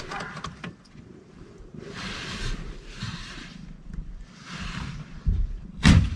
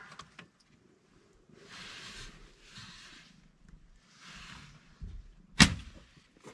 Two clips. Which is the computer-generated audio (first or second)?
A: first